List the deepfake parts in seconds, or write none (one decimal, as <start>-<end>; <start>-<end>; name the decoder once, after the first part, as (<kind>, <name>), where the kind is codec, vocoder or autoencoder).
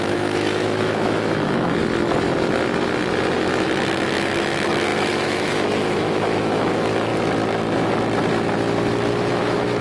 0.0-1.8 (autoencoder, DAC-VAE); 3.9-7.1; 9.1-9.8